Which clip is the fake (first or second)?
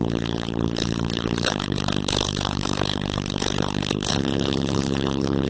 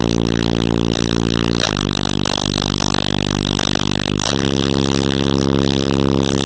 first